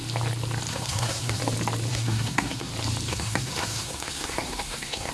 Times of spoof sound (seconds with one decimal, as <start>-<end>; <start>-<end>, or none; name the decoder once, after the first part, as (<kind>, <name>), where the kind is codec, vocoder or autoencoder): 0.7-1.4 (codec, SNAC); 1.9-2.7; 3.1-5.1